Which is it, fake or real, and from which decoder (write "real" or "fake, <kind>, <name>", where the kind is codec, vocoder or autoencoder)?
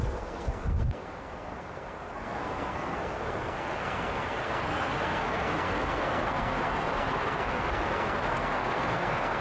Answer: fake, codec, SNAC